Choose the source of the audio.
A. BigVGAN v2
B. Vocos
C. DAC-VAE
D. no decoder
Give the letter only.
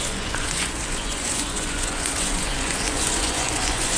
B